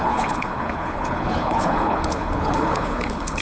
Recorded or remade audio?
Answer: remade